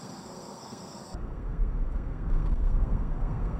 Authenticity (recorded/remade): remade